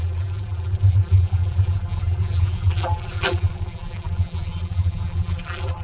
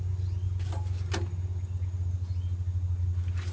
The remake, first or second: first